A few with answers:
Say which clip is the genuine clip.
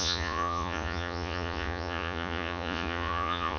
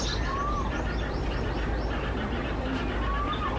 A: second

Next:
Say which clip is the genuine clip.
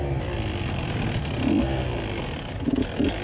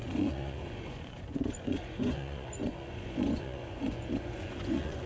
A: first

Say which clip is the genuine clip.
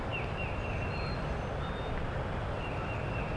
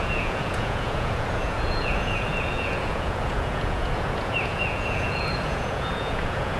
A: first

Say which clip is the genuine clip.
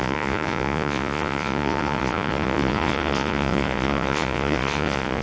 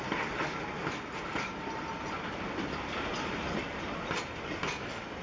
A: second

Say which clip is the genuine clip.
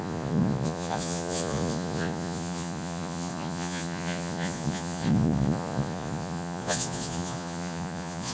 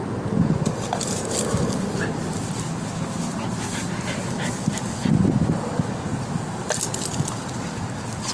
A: second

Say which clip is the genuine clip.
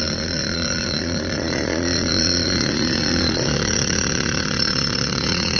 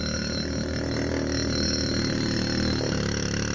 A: second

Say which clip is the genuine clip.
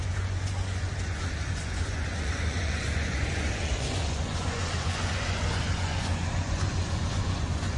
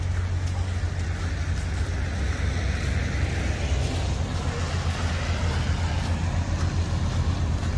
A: second